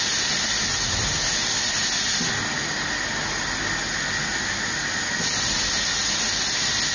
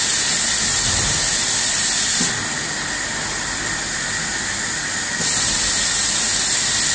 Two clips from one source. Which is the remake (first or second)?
second